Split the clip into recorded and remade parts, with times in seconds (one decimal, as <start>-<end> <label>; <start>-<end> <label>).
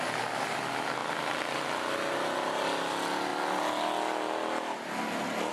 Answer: 0.0-5.5 recorded